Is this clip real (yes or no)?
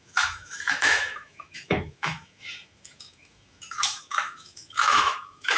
no